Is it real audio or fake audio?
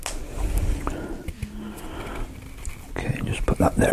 real